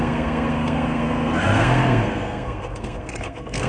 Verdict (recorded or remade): remade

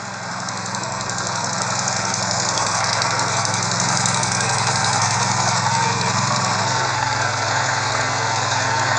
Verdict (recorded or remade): remade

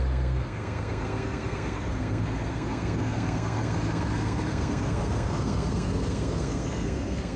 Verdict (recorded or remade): remade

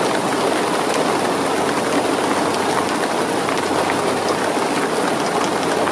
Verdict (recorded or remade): recorded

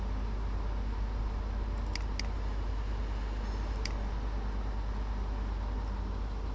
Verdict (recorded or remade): recorded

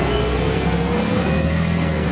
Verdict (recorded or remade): remade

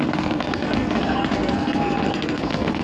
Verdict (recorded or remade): remade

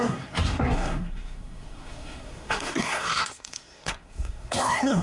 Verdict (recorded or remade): remade